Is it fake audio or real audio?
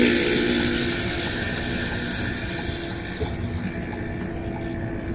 real